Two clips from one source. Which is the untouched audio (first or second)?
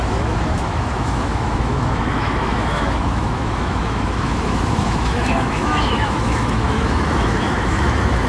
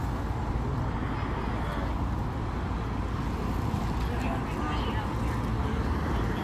second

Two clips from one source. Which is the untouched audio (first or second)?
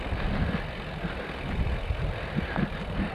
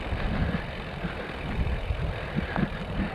first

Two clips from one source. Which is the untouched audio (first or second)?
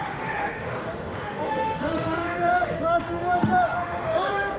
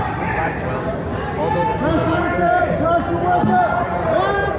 second